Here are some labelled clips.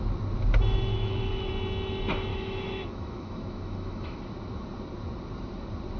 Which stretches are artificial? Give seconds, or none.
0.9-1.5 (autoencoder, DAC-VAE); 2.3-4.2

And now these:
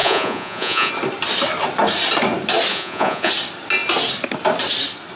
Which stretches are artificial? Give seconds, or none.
0.0-0.9 (vocoder, Vocos); 2.7-3.3

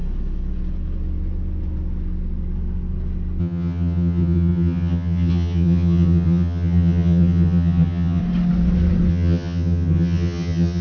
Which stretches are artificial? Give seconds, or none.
3.4-8.2 (vocoder, HiFi-GAN); 9.1-10.8

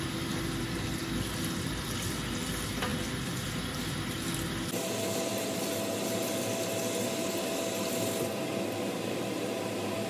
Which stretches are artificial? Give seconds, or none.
none